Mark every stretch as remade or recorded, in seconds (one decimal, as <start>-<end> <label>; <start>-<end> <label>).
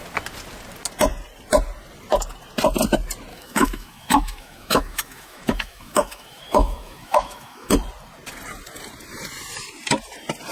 0.0-3.3 recorded; 3.3-7.7 remade; 7.7-10.5 recorded